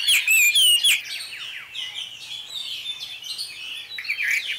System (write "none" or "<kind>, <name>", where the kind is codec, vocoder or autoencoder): none